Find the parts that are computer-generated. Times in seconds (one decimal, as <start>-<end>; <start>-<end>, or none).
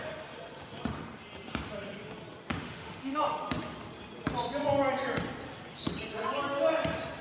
2.5-3.4